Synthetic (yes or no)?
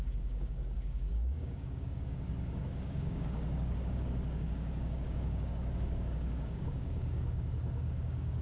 yes